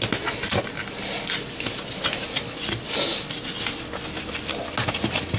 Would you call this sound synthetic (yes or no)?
no